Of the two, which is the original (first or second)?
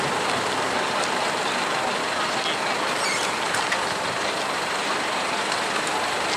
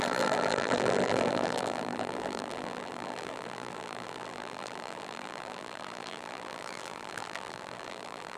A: first